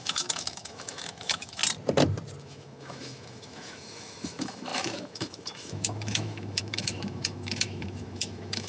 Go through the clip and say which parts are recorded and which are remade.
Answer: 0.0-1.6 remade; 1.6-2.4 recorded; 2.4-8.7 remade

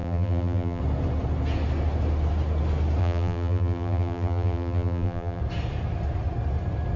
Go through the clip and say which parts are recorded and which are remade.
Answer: 0.0-0.8 remade; 0.8-3.0 recorded; 3.0-5.4 remade; 5.4-7.0 recorded

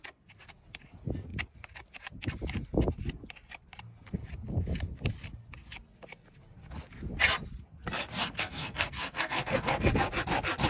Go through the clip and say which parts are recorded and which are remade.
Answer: 0.0-8.2 recorded; 8.2-9.9 remade; 9.9-10.7 recorded

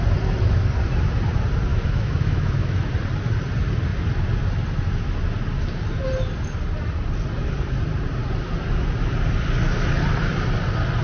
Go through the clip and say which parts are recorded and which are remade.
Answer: 0.0-1.7 recorded; 1.7-2.9 remade; 2.9-11.0 recorded

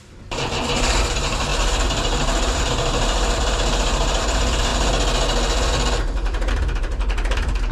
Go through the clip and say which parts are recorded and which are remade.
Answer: 0.0-4.7 remade; 4.7-6.5 recorded; 6.5-7.7 remade

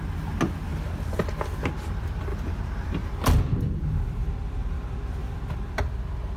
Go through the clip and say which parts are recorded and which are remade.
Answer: 0.0-2.3 recorded; 2.3-3.1 remade; 3.1-6.4 recorded

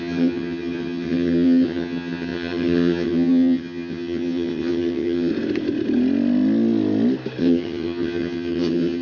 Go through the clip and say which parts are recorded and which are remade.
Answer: 0.0-5.3 remade; 5.3-7.4 recorded; 7.4-9.0 remade